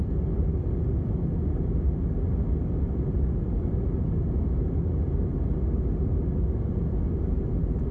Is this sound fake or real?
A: real